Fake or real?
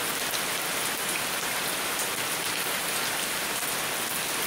real